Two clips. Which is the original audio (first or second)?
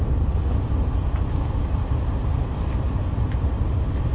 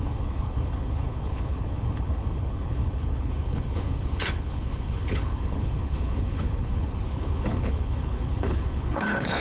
first